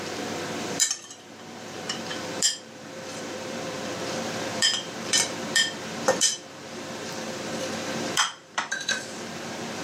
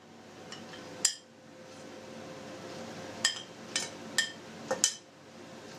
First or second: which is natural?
second